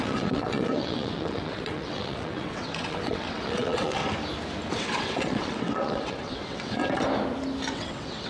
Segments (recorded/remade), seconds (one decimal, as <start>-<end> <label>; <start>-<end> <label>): 0.0-4.0 remade; 4.0-4.7 recorded; 4.7-6.8 remade; 6.8-7.7 recorded; 7.7-8.3 remade